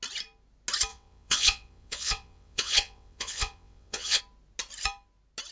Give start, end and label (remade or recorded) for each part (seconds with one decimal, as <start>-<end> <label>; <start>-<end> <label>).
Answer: 0.0-0.9 recorded; 0.9-4.2 remade; 4.2-5.5 recorded

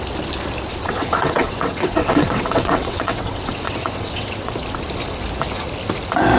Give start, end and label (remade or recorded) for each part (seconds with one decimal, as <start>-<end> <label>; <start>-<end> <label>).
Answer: 0.0-0.7 recorded; 0.7-4.5 remade; 4.5-6.4 recorded

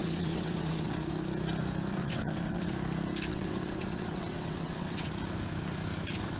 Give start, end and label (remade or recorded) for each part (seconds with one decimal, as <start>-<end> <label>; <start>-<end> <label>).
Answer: 0.0-1.1 remade; 1.1-1.9 recorded; 1.9-2.7 remade; 2.7-3.3 recorded; 3.3-5.1 remade; 5.1-6.4 recorded

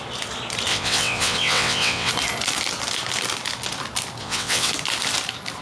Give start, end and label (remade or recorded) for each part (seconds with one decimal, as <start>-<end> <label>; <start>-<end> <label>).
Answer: 0.0-0.7 recorded; 0.7-2.1 remade; 2.1-4.2 recorded; 4.2-4.7 remade; 4.7-5.6 recorded